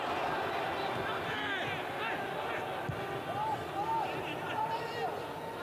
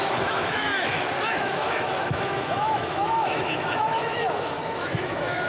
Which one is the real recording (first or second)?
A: first